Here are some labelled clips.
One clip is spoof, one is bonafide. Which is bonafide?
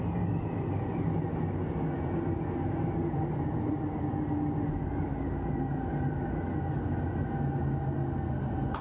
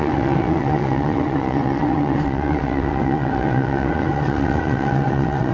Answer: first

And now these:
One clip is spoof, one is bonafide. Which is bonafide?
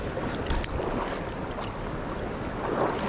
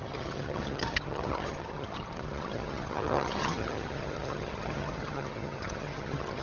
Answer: first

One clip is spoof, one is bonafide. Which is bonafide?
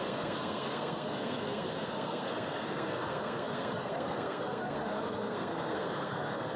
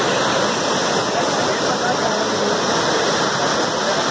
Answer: second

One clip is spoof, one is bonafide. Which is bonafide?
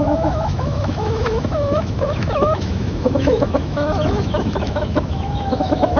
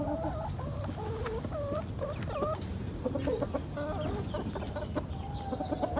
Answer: second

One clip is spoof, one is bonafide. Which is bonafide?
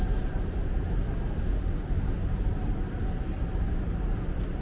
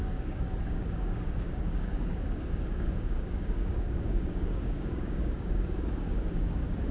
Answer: first